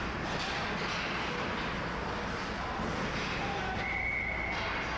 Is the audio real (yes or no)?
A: yes